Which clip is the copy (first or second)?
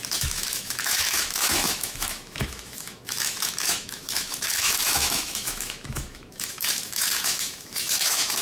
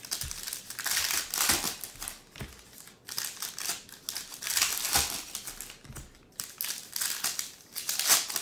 first